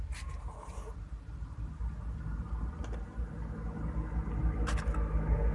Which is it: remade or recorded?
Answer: recorded